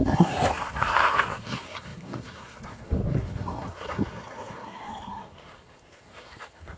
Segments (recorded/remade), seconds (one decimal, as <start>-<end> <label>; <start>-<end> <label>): 0.0-6.8 remade